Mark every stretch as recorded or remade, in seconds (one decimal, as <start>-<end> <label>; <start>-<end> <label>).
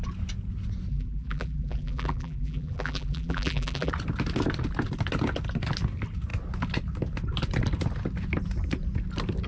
0.0-0.9 recorded; 0.9-3.9 remade; 3.9-9.5 recorded